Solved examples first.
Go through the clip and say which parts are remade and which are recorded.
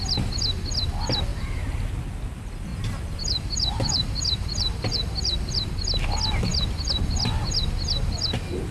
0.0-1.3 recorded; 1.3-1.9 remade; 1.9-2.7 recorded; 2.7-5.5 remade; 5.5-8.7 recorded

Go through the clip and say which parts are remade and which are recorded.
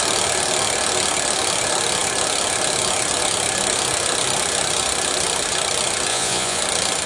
0.0-6.1 recorded; 6.1-6.6 remade; 6.6-7.1 recorded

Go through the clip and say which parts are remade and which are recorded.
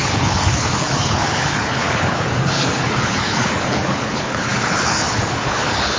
0.0-6.0 remade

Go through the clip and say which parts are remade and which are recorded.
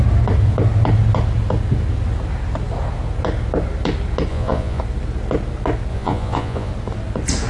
0.0-4.3 recorded; 4.3-4.8 remade; 4.8-5.9 recorded; 5.9-6.7 remade; 6.7-7.5 recorded